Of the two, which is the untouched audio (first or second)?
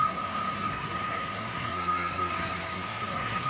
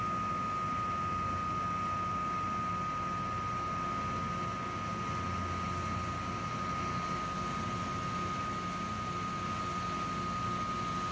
second